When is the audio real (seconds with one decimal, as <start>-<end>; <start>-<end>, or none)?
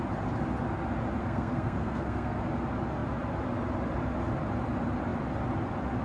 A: 0.0-1.2; 2.4-6.0